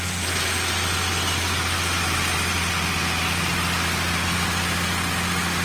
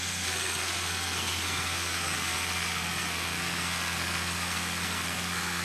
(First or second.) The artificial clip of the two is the second